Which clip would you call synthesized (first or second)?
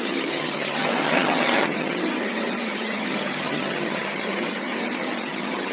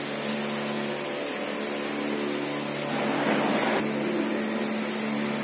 first